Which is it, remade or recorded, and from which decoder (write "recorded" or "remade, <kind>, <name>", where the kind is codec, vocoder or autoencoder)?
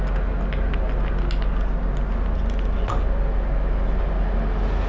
recorded